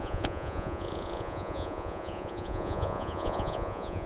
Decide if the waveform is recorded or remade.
remade